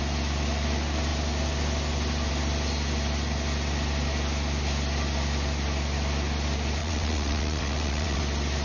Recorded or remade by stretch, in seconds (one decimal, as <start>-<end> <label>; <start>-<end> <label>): 0.0-6.8 recorded; 6.8-8.2 remade; 8.2-8.6 recorded